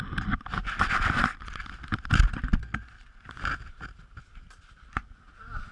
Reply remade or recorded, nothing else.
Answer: recorded